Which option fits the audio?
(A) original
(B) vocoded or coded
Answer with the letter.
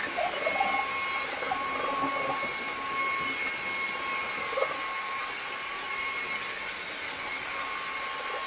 A